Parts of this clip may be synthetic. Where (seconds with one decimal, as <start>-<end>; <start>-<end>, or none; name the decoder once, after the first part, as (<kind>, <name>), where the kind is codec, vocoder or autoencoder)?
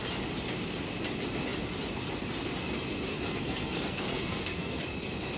3.1-4.8 (codec, SNAC)